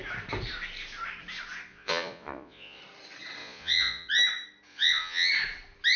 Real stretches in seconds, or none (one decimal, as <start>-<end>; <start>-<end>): 0.0-1.7; 2.8-3.4; 4.1-4.7; 5.3-6.0